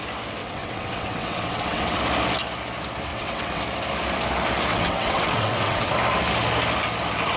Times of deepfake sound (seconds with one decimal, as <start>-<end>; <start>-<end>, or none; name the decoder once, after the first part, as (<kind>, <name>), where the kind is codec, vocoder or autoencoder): 0.4-2.0 (vocoder, WaveNeXt); 3.1-3.6; 4.7-5.9